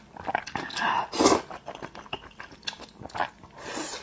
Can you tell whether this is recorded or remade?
recorded